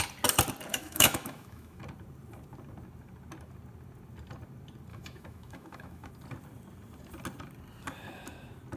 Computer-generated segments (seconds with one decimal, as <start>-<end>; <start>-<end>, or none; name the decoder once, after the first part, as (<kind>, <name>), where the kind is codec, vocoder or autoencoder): 0.7-1.8 (autoencoder, DAC-VAE); 4.9-6.1